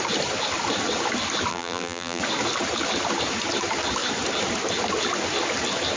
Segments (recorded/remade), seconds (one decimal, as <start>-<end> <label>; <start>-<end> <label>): 0.0-1.5 recorded; 1.5-2.2 remade; 2.2-6.0 recorded